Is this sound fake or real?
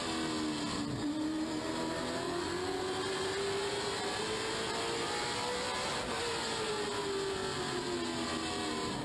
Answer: real